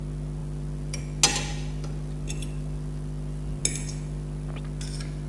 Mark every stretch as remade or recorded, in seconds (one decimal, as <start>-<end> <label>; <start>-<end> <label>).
0.0-0.4 recorded; 0.4-1.0 remade; 1.0-1.5 recorded; 1.5-3.6 remade; 3.6-5.3 recorded